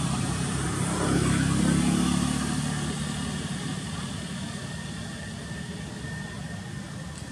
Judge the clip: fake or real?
real